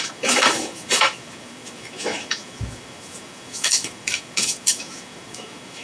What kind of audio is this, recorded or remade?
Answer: remade